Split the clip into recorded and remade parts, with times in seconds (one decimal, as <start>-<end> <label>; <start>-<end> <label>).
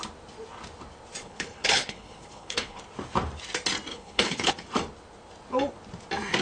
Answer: 0.0-1.2 recorded; 1.2-2.8 remade; 2.8-3.9 recorded; 3.9-4.5 remade; 4.5-6.4 recorded